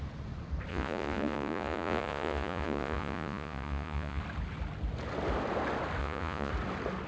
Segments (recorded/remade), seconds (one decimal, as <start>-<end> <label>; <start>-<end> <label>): 0.0-0.7 recorded; 0.7-4.2 remade; 4.2-6.0 recorded; 6.0-6.5 remade; 6.5-7.1 recorded